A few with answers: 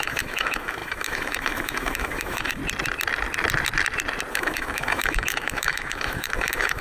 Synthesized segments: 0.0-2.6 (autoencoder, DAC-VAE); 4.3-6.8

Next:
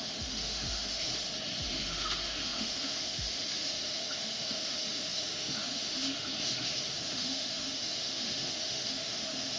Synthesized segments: 0.0-1.1 (autoencoder, DAC-VAE); 1.7-9.6

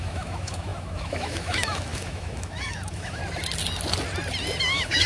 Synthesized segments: 0.0-3.2 (autoencoder, DAC-VAE); 4.6-5.1

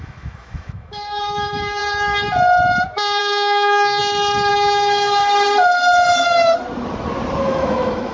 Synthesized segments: 0.0-1.8 (autoencoder, DAC-VAE); 3.2-4.0; 4.5-5.2; 7.4-8.1

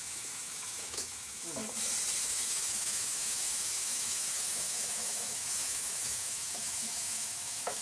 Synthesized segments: 0.0-1.6 (autoencoder, DAC-VAE); 2.2-7.8

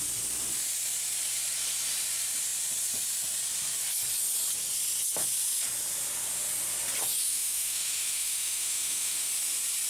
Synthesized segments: 7.2-9.3 (autoencoder, DAC-VAE)

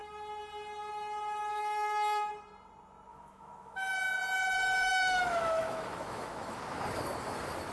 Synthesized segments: 1.5-2.3 (autoencoder, DAC-VAE); 3.1-3.9; 4.9-6.6

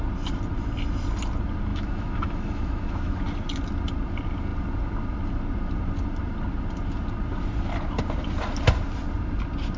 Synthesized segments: 1.7-3.1 (autoencoder, DAC-VAE)